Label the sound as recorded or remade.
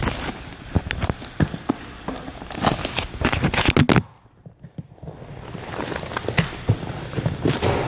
recorded